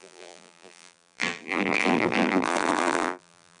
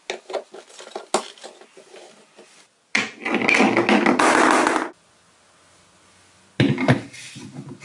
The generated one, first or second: first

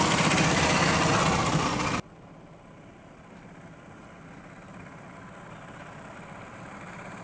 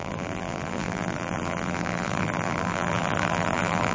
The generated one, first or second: second